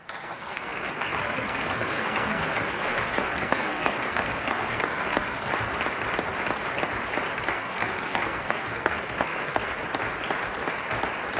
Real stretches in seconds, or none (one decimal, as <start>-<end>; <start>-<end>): 5.5-7.4; 9.7-11.4